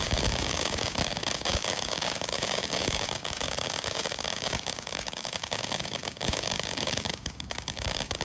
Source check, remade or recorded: remade